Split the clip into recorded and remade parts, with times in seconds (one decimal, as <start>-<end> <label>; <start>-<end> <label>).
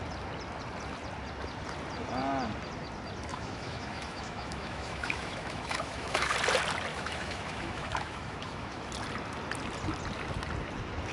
0.0-3.3 recorded; 3.3-6.3 remade; 6.3-6.9 recorded; 6.9-8.9 remade; 8.9-11.1 recorded